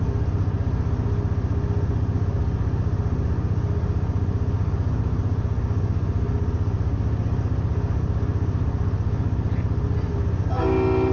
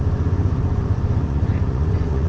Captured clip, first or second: first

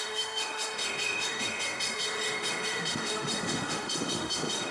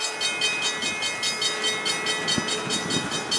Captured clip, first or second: second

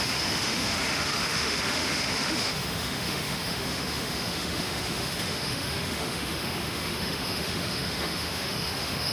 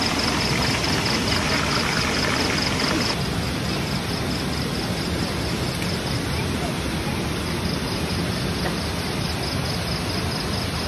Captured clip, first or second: second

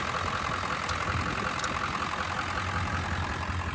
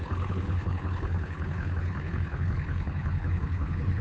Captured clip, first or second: first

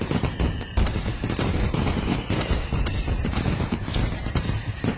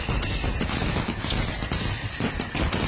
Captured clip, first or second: second